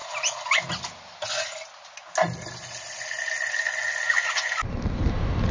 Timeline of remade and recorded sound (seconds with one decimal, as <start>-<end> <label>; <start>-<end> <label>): 0.0-5.5 recorded